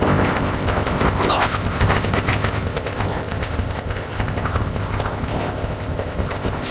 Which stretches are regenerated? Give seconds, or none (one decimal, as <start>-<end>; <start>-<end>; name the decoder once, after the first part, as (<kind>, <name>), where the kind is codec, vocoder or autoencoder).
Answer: 0.0-6.7 (codec, ZipCodec)